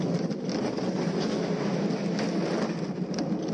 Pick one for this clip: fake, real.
real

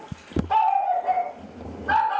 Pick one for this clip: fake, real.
real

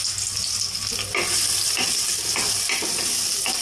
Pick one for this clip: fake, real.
real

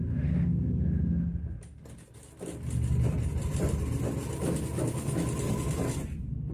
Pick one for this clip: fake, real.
real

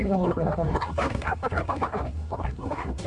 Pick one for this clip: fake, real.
fake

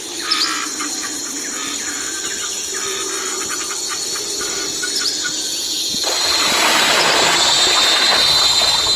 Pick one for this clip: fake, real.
real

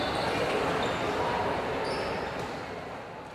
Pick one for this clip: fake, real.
real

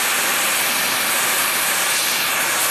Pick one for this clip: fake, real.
real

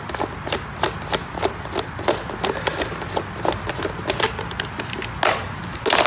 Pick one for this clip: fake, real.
real